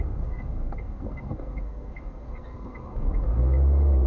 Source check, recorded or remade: remade